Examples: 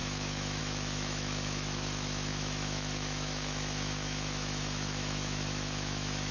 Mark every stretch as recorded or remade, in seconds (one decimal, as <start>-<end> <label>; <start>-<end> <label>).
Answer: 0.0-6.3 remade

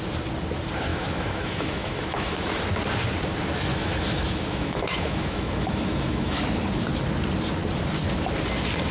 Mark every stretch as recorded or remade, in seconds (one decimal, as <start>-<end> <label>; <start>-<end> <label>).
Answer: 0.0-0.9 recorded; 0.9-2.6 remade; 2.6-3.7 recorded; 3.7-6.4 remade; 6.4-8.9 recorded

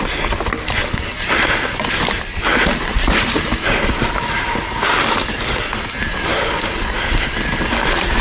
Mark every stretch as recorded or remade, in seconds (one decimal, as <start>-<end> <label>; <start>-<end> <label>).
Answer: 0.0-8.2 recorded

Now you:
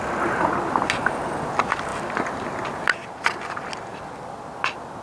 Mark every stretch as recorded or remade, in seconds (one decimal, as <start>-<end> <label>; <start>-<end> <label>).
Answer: 0.0-5.0 recorded

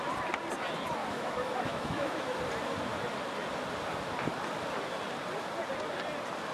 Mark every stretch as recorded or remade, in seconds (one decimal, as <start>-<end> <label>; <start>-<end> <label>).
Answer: 0.0-1.0 recorded; 1.0-2.4 remade; 2.4-6.5 recorded

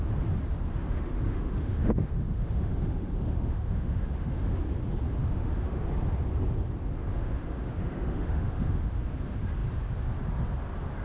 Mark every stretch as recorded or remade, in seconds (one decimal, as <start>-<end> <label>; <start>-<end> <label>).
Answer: 0.0-0.7 recorded; 0.7-4.5 remade; 4.5-5.2 recorded; 5.2-5.8 remade; 5.8-7.0 recorded; 7.0-9.0 remade; 9.0-11.0 recorded

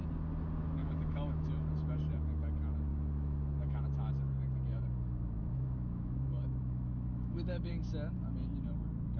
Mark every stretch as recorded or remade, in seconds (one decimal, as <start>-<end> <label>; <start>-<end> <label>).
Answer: 0.0-0.8 recorded; 0.8-1.5 remade; 1.5-2.9 recorded; 2.9-4.1 remade; 4.1-4.7 recorded; 4.7-7.7 remade; 7.7-9.2 recorded